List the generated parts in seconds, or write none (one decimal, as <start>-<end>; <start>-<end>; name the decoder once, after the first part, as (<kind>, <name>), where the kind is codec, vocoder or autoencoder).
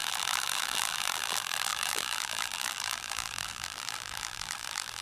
0.0-5.0 (vocoder, BigVGAN v2)